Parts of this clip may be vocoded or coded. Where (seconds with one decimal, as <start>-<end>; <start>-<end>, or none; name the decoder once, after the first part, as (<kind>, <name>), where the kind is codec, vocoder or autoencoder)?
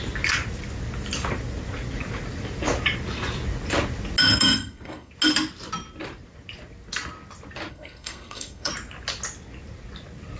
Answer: 4.3-5.1 (codec, SNAC); 7.7-8.7